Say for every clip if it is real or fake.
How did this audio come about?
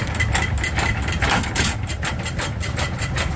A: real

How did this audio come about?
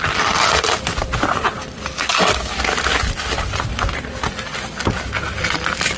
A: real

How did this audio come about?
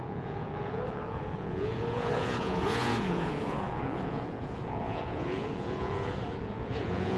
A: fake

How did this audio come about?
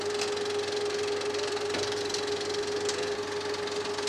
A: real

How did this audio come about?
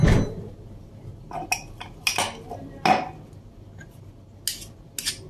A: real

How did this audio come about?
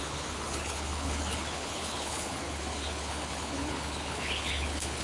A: fake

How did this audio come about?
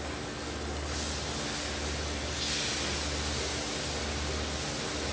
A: real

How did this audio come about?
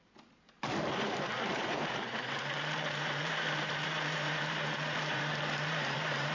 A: fake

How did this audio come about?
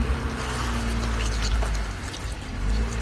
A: real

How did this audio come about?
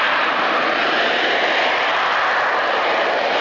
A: real